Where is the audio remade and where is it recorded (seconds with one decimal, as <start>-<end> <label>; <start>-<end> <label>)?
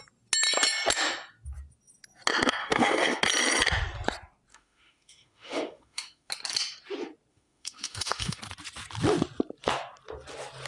0.0-2.6 recorded; 2.6-3.2 remade; 3.2-4.5 recorded; 4.5-6.3 remade; 6.3-7.3 recorded; 7.3-8.4 remade; 8.4-10.7 recorded